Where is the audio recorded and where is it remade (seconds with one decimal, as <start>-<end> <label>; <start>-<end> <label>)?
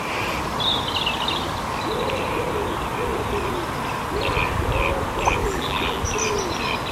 0.0-5.4 recorded; 5.4-6.0 remade; 6.0-6.9 recorded